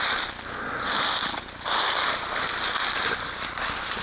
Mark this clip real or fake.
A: fake